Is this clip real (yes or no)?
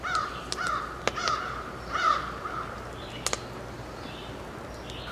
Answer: yes